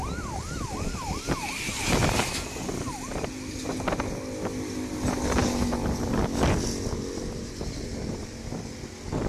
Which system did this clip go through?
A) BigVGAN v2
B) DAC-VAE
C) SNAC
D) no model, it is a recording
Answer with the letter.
D